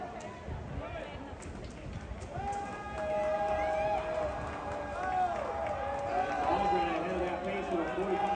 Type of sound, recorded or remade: recorded